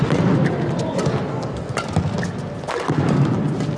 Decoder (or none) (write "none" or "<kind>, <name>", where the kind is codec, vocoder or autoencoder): none